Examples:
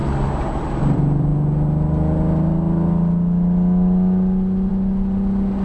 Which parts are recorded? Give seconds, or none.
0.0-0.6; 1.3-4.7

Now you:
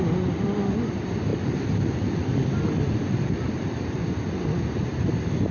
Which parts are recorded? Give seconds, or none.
0.0-1.3; 4.0-5.5

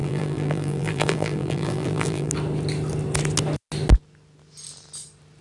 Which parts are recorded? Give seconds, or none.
2.3-5.4

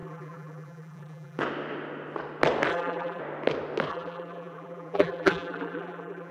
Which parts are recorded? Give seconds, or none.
1.4-2.7; 3.2-3.9

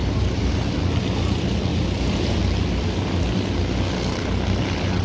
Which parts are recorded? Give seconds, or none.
0.5-1.7; 2.4-5.0